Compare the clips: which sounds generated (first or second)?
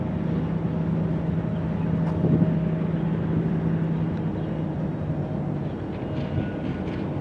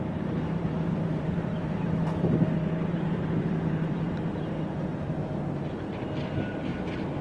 second